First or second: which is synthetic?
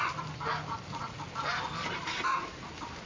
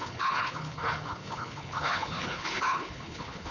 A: second